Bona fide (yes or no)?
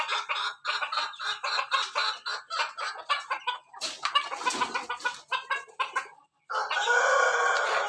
yes